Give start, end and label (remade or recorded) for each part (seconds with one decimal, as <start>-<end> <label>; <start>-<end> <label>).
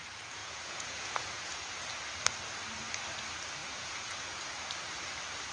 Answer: 0.0-0.4 recorded; 0.4-1.8 remade; 1.8-3.6 recorded; 3.6-4.4 remade; 4.4-5.5 recorded